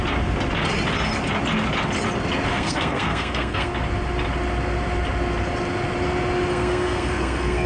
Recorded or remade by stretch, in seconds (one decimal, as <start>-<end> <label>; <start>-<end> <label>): 0.0-2.5 recorded; 2.5-3.7 remade; 3.7-6.5 recorded; 6.5-7.7 remade